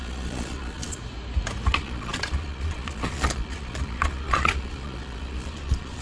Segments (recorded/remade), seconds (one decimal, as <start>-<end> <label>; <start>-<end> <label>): 0.0-1.0 remade; 1.0-1.7 recorded; 1.7-6.0 remade